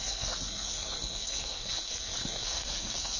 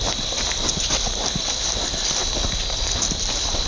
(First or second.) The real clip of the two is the second